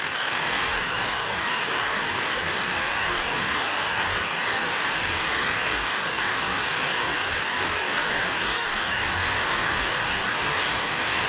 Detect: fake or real fake